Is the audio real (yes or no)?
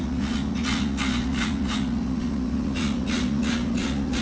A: no